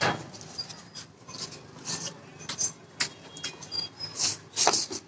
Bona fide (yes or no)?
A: yes